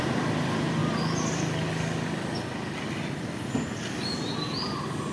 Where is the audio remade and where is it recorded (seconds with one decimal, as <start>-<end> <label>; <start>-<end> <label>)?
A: 0.0-5.1 recorded